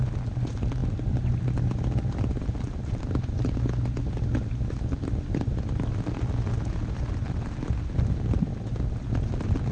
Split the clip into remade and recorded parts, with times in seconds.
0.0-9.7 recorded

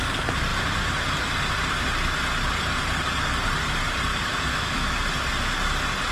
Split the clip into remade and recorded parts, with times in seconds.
0.0-4.1 recorded; 4.1-5.0 remade; 5.0-6.1 recorded